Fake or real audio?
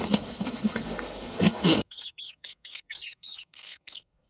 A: fake